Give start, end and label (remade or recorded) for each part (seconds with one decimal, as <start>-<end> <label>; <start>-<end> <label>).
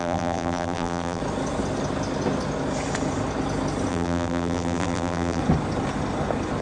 0.0-1.2 remade; 1.2-3.9 recorded; 3.9-5.4 remade; 5.4-6.6 recorded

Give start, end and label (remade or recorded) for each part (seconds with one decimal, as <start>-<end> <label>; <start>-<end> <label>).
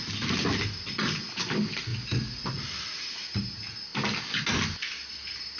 0.0-5.6 recorded